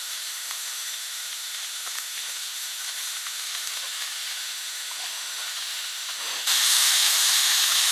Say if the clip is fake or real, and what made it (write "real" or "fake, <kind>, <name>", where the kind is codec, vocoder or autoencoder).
fake, autoencoder, DAC-VAE